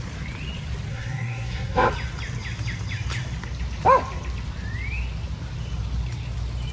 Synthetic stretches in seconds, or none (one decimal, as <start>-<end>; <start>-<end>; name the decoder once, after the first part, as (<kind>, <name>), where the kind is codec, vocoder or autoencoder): 0.9-1.9 (codec, SNAC)